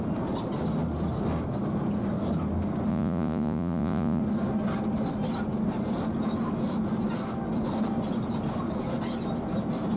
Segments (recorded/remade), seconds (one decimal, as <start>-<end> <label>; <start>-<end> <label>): 0.0-2.9 recorded; 2.9-4.2 remade; 4.2-10.0 recorded